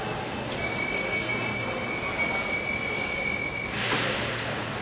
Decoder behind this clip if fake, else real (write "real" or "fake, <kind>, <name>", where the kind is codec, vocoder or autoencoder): real